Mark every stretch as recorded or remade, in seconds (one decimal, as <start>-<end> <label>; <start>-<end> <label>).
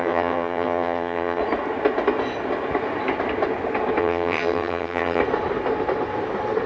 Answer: 0.0-1.4 remade; 1.4-4.0 recorded; 4.0-5.2 remade; 5.2-6.7 recorded